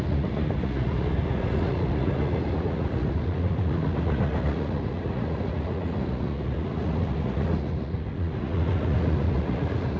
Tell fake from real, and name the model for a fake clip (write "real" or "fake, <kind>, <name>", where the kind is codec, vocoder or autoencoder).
fake, vocoder, Vocos